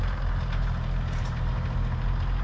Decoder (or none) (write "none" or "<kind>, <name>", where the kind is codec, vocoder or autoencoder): vocoder, BigVGAN v2